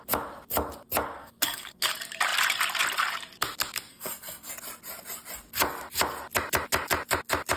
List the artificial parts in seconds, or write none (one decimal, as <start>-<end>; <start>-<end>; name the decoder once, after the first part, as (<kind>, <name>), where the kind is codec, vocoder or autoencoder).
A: 1.2-1.9 (codec, SNAC); 3.9-4.5